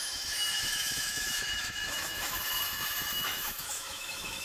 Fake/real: fake